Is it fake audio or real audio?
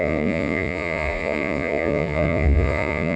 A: fake